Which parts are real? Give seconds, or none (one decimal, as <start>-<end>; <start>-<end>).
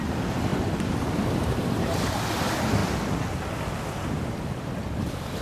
0.0-2.8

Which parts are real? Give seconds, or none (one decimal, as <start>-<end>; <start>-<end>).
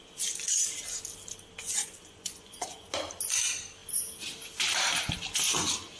0.0-1.6; 2.9-6.0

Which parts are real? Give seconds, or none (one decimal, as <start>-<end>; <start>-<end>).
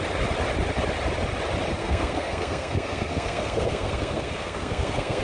0.0-1.8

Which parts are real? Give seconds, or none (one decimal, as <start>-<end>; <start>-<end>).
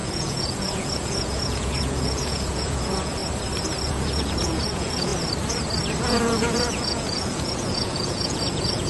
3.2-3.9; 5.1-6.0